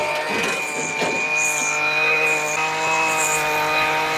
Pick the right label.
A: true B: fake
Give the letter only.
A